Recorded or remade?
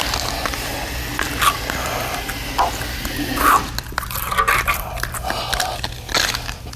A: recorded